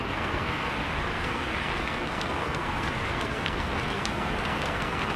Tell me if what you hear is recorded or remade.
remade